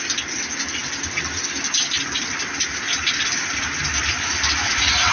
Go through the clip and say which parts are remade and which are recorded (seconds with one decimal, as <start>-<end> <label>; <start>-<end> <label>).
0.0-5.1 recorded